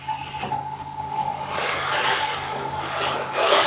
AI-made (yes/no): yes